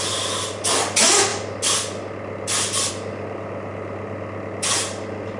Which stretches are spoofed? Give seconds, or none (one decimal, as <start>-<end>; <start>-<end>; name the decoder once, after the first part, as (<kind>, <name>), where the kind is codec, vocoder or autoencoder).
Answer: none

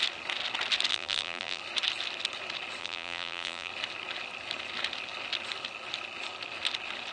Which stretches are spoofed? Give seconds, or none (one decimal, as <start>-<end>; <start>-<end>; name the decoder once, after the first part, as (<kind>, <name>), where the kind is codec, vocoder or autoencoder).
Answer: 0.9-1.6 (vocoder, BigVGAN v2); 2.8-3.7